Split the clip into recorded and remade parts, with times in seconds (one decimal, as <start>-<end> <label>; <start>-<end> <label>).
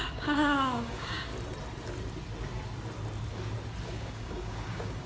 0.0-1.3 remade; 1.3-3.9 recorded; 3.9-5.1 remade